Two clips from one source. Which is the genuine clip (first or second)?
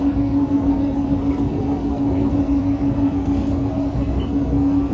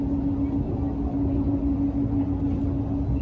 second